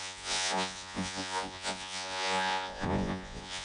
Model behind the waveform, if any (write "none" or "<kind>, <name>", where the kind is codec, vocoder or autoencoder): vocoder, Vocos